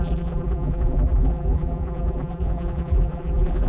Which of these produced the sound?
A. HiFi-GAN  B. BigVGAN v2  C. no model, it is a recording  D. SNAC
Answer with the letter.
B